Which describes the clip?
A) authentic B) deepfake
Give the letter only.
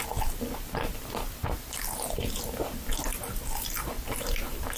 A